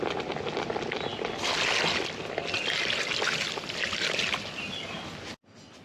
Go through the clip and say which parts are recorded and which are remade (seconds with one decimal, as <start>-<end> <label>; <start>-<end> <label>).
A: 0.0-5.8 recorded